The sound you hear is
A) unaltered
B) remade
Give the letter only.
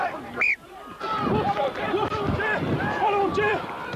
B